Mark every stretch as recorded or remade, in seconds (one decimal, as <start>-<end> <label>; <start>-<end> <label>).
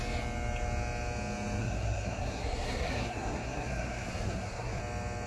0.0-1.6 recorded; 1.6-4.8 remade; 4.8-5.3 recorded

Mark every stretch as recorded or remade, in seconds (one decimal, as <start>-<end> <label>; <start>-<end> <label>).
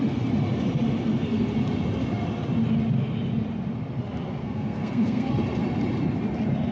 0.0-4.4 recorded; 4.4-5.3 remade; 5.3-6.7 recorded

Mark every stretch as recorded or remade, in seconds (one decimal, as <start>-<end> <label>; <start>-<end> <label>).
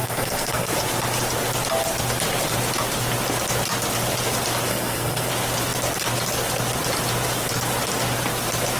0.0-0.7 remade; 0.7-4.7 recorded; 4.7-5.3 remade; 5.3-8.8 recorded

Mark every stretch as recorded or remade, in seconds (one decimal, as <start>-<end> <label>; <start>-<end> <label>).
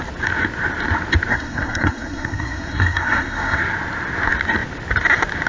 0.0-1.3 recorded; 1.3-3.6 remade; 3.6-5.5 recorded